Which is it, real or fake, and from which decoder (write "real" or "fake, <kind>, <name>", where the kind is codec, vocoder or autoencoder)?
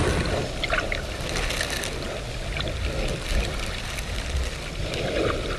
real